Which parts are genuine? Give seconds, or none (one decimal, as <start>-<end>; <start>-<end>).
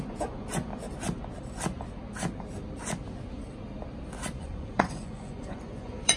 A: 0.7-4.4